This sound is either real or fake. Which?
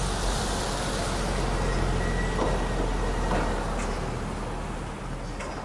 real